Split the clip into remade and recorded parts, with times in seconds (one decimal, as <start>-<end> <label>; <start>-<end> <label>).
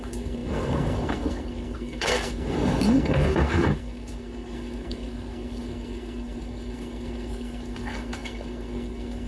0.0-9.3 remade